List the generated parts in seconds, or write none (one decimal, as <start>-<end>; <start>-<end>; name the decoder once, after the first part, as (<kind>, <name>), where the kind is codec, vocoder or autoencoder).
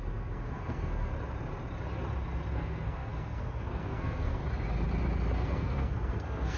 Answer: 0.0-1.1 (codec, SNAC); 2.5-4.4; 5.3-6.6